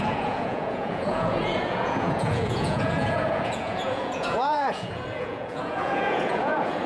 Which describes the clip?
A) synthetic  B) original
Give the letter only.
A